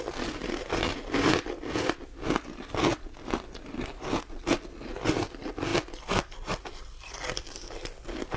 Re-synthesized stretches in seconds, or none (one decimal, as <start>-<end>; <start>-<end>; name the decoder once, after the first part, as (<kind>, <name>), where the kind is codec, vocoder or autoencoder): none